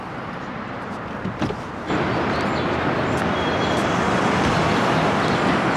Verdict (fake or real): real